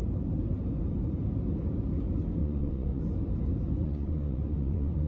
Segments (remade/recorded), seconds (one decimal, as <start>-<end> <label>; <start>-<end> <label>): 0.0-2.4 recorded; 2.4-3.0 remade; 3.0-3.8 recorded; 3.8-5.1 remade